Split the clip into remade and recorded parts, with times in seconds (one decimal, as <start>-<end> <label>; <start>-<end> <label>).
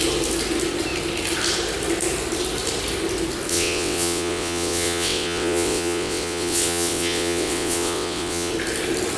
0.0-3.5 recorded; 3.5-8.5 remade; 8.5-9.2 recorded